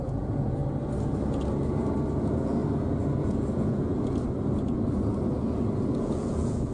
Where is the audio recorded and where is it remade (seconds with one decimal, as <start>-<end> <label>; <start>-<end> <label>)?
0.0-0.6 remade; 0.6-2.2 recorded; 2.2-2.6 remade; 2.6-3.2 recorded; 3.2-3.9 remade; 3.9-5.9 recorded; 5.9-6.7 remade